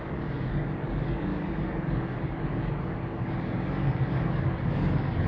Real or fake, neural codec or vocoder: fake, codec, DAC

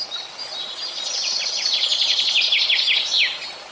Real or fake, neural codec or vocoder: real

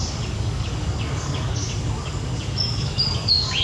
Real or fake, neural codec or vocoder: fake, codec, DAC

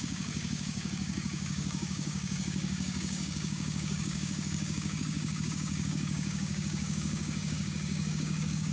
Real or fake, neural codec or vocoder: fake, codec, DAC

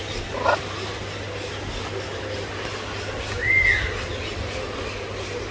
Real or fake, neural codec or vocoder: real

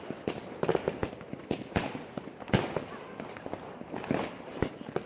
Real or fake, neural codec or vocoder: real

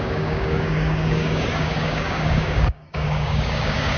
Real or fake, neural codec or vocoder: fake, codec, DAC